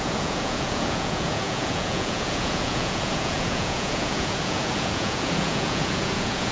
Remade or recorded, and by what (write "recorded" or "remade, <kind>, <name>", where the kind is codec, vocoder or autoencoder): remade, vocoder, Vocos